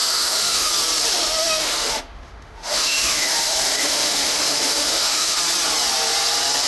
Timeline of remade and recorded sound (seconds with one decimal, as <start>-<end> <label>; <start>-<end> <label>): 0.0-0.7 remade; 0.7-1.4 recorded; 1.4-5.4 remade; 5.4-6.7 recorded

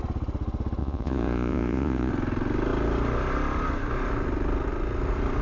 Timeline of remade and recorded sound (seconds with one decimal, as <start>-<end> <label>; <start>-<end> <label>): 0.0-0.8 recorded; 0.8-2.1 remade; 2.1-5.4 recorded

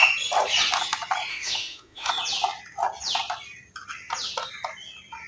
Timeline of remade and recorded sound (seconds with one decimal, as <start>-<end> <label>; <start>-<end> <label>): 0.0-1.3 recorded; 1.3-2.1 remade; 2.1-5.3 recorded

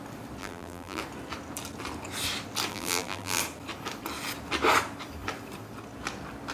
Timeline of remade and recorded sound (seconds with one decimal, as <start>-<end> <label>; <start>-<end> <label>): 0.0-0.4 recorded; 0.4-1.0 remade; 1.0-2.7 recorded; 2.7-3.4 remade; 3.4-6.5 recorded

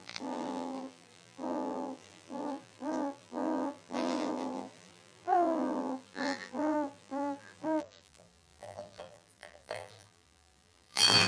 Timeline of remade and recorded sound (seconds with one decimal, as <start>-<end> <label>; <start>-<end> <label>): 0.0-11.3 remade

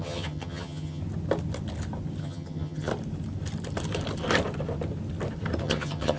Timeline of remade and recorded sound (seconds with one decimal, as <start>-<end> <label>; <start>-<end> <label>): 0.0-1.0 remade; 1.0-2.2 recorded; 2.2-2.9 remade; 2.9-5.6 recorded; 5.6-6.2 remade

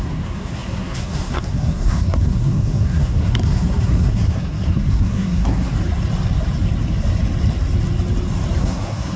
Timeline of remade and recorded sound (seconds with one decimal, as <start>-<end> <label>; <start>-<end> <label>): 0.0-5.7 remade; 5.7-8.6 recorded; 8.6-9.2 remade